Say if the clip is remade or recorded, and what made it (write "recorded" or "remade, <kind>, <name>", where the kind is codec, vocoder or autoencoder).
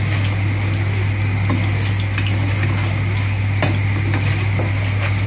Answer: recorded